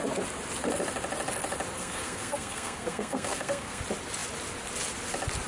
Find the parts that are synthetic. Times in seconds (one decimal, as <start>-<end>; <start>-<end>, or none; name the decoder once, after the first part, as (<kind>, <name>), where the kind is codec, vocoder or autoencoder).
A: 1.8-3.8 (codec, SNAC)